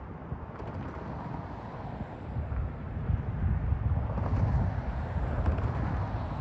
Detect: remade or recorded recorded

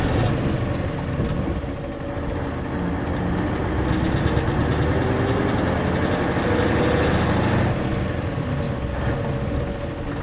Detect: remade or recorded recorded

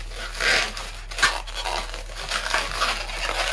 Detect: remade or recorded recorded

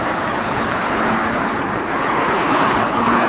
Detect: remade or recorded remade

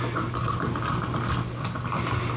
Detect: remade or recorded recorded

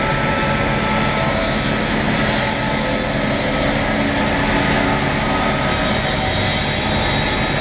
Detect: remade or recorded recorded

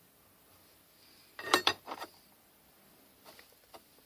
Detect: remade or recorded recorded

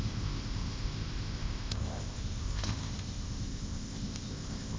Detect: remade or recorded remade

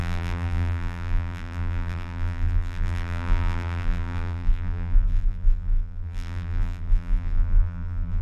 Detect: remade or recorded remade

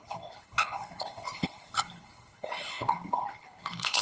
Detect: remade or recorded remade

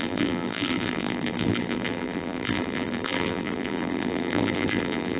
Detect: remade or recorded remade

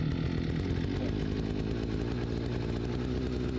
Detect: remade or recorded recorded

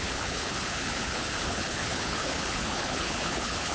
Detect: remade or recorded remade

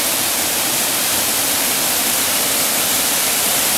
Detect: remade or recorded remade